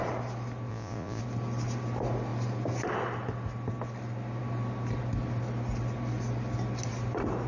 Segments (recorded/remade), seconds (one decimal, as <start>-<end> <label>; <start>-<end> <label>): 0.0-0.7 recorded; 0.7-1.2 remade; 1.2-7.5 recorded